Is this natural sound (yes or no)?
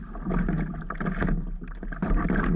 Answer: yes